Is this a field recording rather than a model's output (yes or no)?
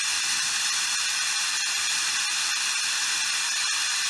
yes